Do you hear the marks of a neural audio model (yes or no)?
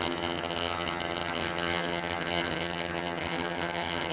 yes